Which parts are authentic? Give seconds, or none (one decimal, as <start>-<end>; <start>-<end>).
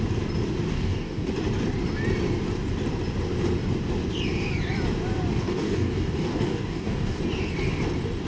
0.0-0.7; 1.3-5.3; 7.2-8.3